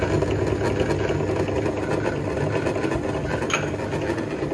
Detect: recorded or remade recorded